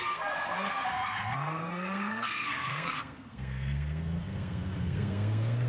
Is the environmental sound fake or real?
fake